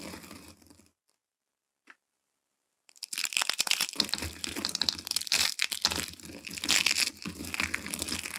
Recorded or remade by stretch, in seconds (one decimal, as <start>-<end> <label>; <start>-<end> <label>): 0.0-6.3 remade; 6.3-7.9 recorded; 7.9-8.4 remade